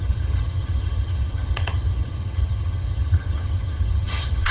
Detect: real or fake fake